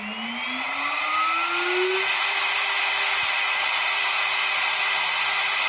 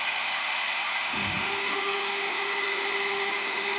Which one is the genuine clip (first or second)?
first